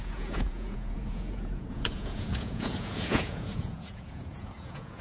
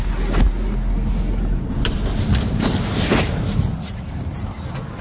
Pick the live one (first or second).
second